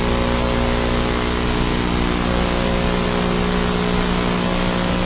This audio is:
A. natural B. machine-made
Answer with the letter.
A